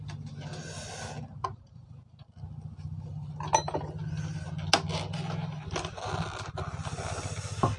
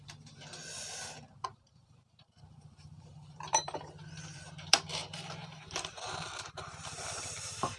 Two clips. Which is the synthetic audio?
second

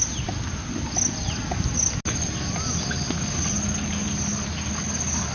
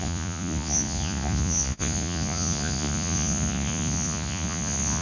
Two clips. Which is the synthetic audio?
second